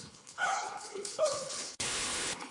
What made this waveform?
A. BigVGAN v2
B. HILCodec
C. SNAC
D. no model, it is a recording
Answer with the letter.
B